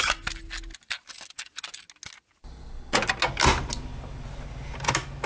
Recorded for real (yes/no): yes